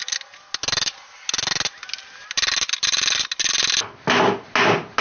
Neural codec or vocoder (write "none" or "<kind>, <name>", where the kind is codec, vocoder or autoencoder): none